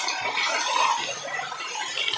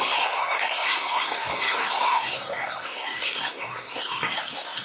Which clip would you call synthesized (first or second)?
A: second